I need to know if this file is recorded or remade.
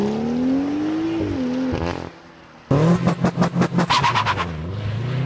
recorded